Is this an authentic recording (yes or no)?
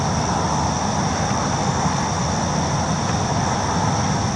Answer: yes